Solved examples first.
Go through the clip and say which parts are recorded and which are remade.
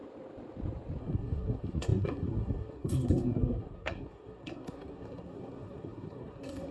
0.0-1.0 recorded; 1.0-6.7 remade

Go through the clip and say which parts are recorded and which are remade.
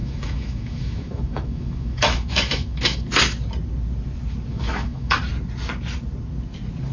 0.0-3.2 remade; 3.2-4.5 recorded; 4.5-5.2 remade; 5.2-6.9 recorded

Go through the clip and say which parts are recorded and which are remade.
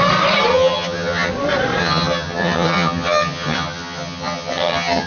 0.0-0.5 recorded; 0.5-1.3 remade; 1.3-1.8 recorded; 1.8-5.1 remade